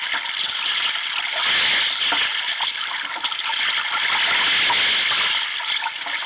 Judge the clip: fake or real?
real